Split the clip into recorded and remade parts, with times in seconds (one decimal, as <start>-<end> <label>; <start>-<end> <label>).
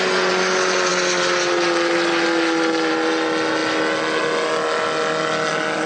0.0-5.9 recorded